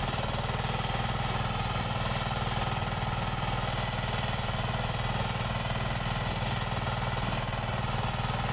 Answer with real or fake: real